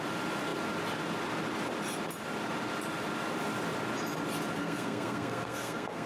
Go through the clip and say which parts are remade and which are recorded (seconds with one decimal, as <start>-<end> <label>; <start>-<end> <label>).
0.0-4.6 recorded; 4.6-6.1 remade